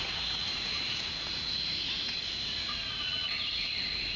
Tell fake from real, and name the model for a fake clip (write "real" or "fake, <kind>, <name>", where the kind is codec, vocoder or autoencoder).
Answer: fake, vocoder, Vocos